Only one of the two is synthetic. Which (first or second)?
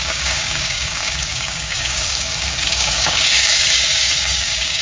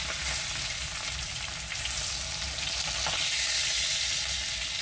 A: first